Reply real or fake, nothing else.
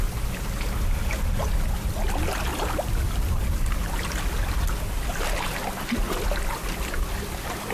real